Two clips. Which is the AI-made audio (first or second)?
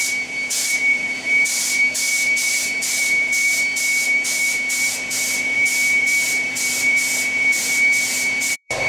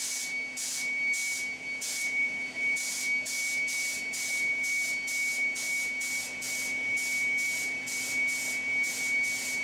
first